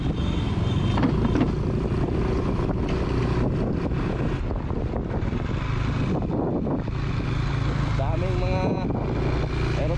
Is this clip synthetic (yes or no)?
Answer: no